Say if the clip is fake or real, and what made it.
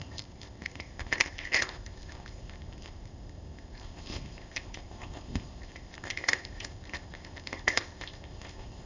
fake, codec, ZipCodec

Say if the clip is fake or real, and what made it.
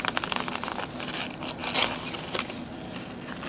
real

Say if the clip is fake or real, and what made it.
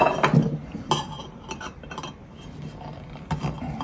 real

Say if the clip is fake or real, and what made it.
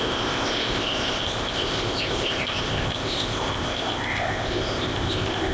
fake, codec, ZipCodec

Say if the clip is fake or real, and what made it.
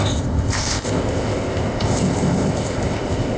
fake, codec, ZipCodec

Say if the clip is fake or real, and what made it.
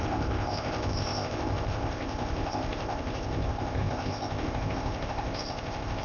fake, codec, ZipCodec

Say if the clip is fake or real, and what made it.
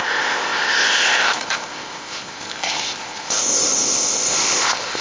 fake, codec, ZipCodec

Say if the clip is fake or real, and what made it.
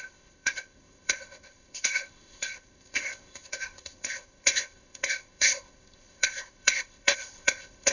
fake, codec, ZipCodec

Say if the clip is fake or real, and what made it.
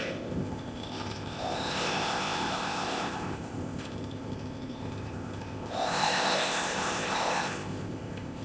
fake, codec, ZipCodec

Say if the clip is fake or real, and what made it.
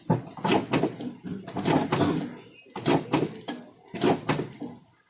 real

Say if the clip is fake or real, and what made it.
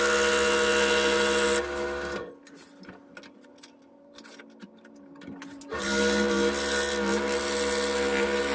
real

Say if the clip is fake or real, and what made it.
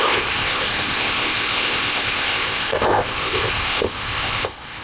fake, codec, ZipCodec